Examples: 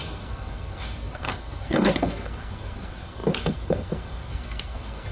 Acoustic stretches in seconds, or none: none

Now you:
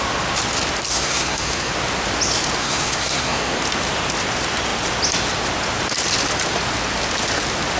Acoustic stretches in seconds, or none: 0.0-0.9; 1.7-2.6; 3.6-7.8